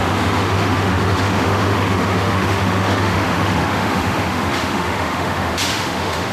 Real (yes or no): no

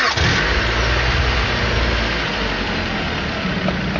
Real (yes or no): yes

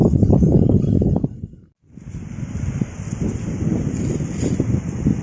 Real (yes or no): yes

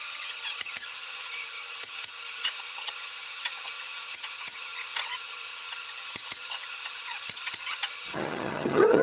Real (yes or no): no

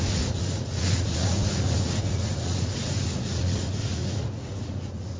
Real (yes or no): no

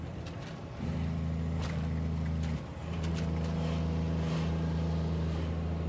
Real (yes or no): yes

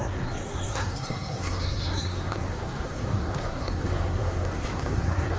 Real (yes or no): no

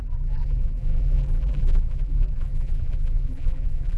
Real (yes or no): no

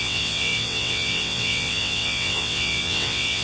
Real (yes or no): no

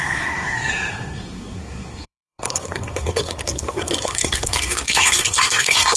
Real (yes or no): no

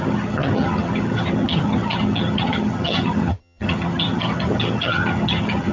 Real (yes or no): no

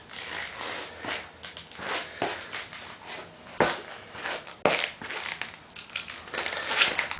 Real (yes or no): yes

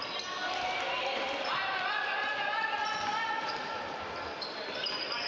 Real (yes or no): no